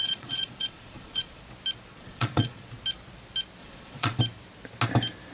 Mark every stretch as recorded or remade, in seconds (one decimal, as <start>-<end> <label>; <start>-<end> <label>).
0.0-1.4 remade; 1.4-1.9 recorded; 1.9-2.7 remade; 2.7-3.6 recorded; 3.6-4.2 remade; 4.2-5.3 recorded